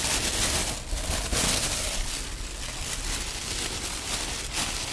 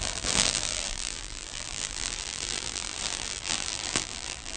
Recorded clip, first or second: first